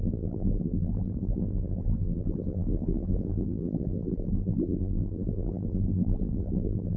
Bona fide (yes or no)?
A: no